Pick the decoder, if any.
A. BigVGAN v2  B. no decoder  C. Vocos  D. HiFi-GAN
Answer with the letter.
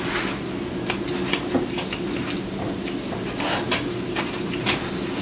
B